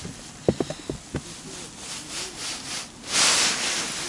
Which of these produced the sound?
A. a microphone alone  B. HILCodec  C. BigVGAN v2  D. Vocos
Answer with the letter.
A